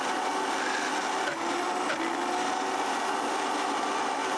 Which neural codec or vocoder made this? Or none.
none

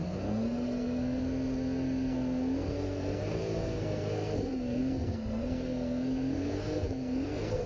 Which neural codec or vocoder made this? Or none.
codec, SNAC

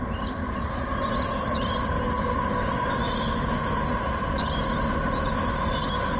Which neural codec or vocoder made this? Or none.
none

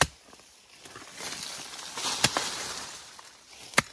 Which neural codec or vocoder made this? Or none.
none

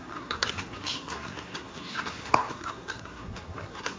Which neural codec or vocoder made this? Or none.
codec, SNAC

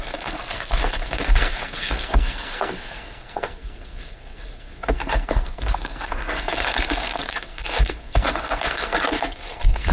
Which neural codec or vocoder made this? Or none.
codec, SNAC